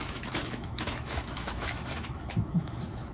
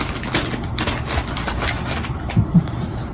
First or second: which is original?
second